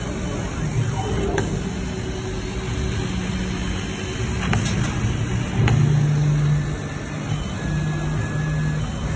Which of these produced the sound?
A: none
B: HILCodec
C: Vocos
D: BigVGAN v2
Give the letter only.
A